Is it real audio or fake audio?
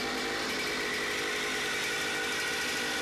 real